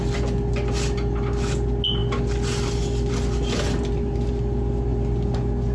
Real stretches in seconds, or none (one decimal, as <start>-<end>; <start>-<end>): 0.0-5.7